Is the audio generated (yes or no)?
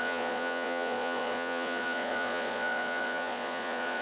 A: yes